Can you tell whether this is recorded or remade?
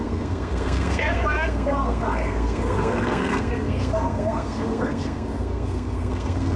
remade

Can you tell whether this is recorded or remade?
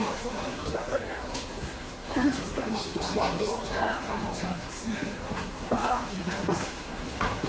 remade